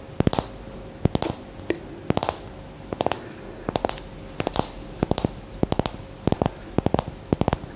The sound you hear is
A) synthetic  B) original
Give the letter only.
B